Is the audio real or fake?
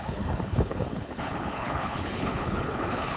fake